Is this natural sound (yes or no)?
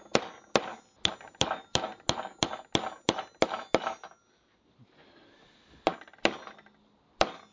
yes